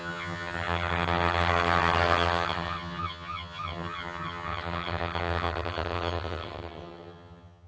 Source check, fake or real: fake